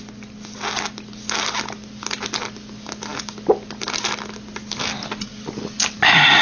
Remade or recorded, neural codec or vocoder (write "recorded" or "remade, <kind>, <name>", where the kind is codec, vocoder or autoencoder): recorded